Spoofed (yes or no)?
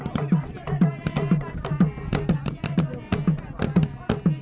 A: no